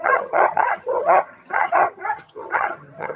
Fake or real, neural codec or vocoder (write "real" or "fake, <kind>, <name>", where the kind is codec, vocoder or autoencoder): fake, vocoder, HiFi-GAN